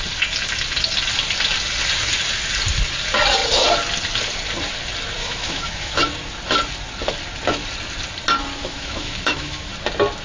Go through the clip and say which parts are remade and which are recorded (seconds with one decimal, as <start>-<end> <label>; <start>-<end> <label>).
0.0-5.2 recorded; 5.2-6.0 remade; 6.0-8.6 recorded; 8.6-9.7 remade; 9.7-10.2 recorded